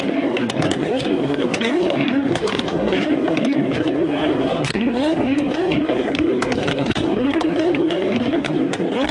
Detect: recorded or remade remade